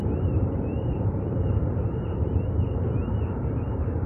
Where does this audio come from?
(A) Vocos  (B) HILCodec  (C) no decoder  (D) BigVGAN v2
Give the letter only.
D